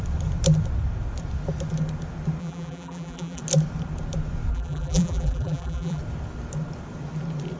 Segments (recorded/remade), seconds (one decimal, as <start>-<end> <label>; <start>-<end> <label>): 0.0-2.4 recorded; 2.4-3.4 remade; 3.4-4.5 recorded; 4.5-6.0 remade; 6.0-7.6 recorded